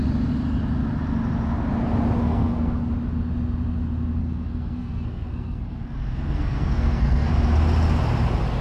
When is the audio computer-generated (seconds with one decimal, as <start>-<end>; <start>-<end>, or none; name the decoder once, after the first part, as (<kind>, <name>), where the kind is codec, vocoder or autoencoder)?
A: 2.2-2.9 (codec, SNAC); 4.2-7.3